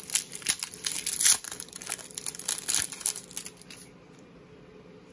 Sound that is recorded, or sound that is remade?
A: recorded